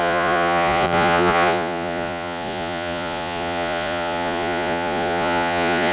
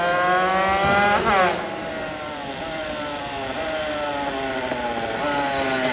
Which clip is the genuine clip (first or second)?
second